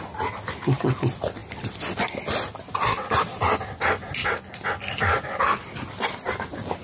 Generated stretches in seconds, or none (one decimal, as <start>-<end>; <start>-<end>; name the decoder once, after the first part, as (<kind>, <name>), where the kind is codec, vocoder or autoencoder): none